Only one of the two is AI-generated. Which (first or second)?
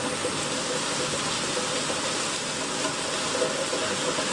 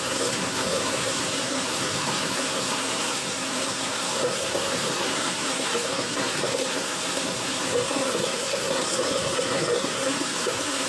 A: second